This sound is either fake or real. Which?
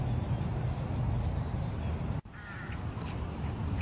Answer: real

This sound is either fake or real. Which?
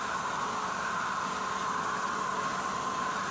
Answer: real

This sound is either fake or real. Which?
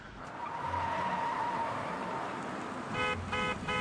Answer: real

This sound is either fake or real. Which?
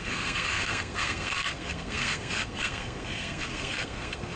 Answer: fake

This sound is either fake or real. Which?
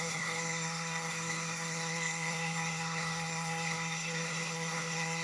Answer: fake